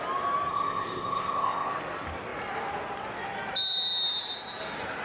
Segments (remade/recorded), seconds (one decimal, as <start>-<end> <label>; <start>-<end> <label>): 0.0-0.5 recorded; 0.5-1.7 remade; 1.7-5.0 recorded